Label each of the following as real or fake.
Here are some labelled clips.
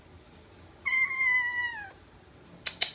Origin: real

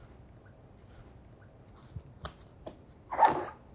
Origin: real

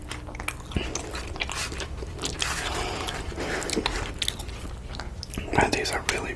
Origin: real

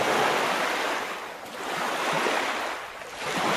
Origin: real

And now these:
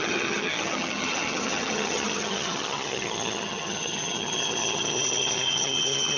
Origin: fake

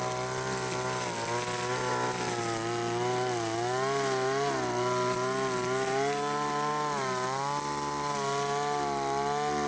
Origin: real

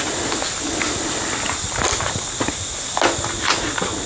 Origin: real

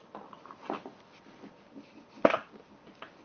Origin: real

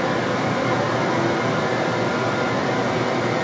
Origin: real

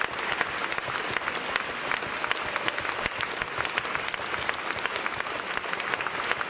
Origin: real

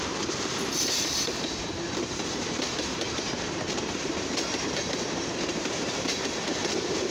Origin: fake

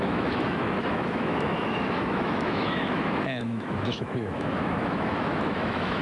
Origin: fake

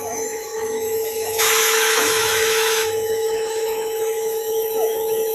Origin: fake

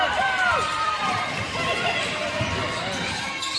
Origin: fake